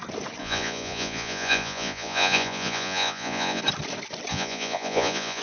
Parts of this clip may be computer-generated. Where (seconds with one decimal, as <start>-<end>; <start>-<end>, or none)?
0.4-3.6; 4.3-5.4